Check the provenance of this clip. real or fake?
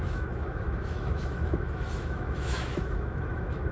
fake